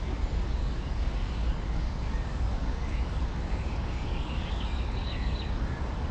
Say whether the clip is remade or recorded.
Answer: remade